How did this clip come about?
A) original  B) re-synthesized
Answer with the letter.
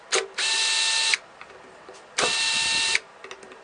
A